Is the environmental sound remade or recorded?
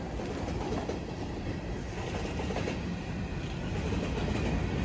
recorded